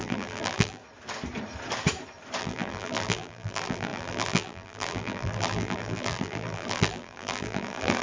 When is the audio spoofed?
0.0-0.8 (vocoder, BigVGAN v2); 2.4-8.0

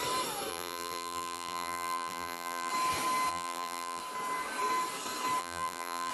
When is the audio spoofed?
0.5-2.7 (vocoder, BigVGAN v2); 3.3-4.0; 5.4-6.1

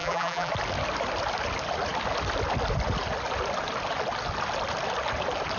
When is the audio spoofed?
0.0-0.5 (vocoder, BigVGAN v2)

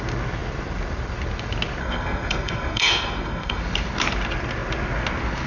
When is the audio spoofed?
1.8-3.6 (codec, SNAC)

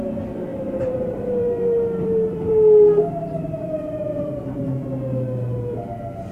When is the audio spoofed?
0.5-4.2 (vocoder, BigVGAN v2)

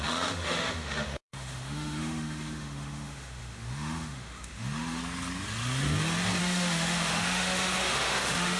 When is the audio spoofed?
0.0-5.0 (autoencoder, DAC-VAE); 6.4-8.6

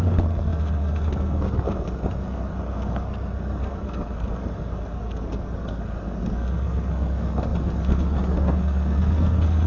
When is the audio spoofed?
0.0-9.7 (codec, SNAC)

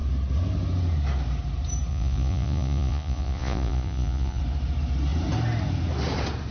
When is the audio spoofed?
1.9-4.4 (vocoder, Vocos)